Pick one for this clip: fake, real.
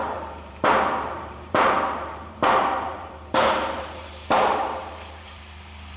fake